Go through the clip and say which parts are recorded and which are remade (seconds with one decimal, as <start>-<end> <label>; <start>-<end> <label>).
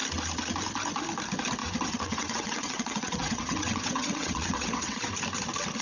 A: 0.0-1.6 recorded; 1.6-5.1 remade; 5.1-5.8 recorded